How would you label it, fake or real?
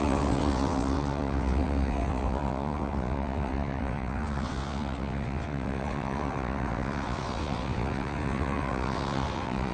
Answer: fake